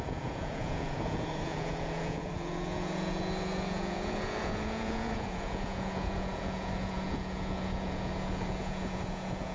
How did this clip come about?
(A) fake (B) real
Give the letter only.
A